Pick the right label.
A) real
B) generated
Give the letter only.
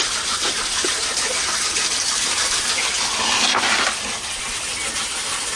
A